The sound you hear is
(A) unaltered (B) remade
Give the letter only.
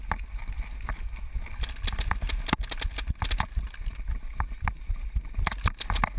A